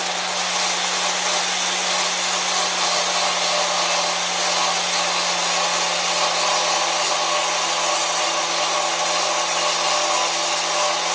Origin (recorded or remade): recorded